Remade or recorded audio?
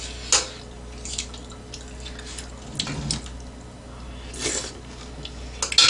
recorded